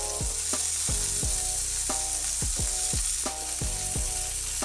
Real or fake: real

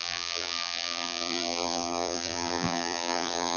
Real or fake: fake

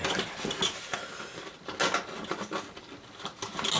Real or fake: real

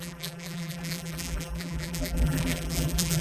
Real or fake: fake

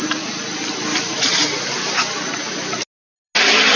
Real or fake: real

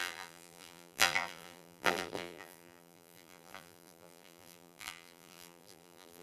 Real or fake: fake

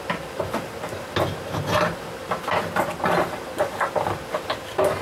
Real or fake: real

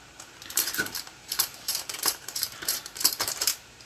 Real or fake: fake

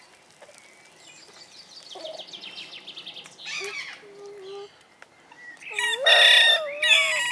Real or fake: real